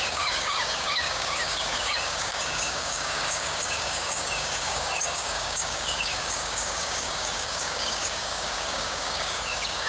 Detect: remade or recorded remade